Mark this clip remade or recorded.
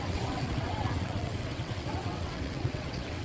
remade